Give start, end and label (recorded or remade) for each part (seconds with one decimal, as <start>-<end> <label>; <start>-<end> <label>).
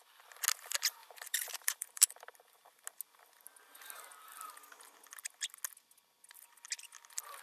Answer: 0.0-1.0 recorded; 1.0-2.1 remade; 2.1-7.4 recorded